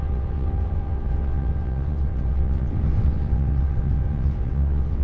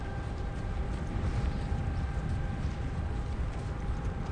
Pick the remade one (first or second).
first